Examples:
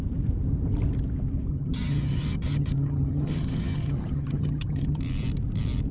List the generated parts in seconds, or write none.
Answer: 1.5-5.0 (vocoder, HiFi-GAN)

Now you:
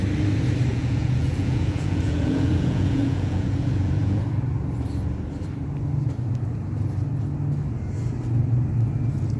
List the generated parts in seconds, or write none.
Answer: 0.7-4.2 (vocoder, Vocos)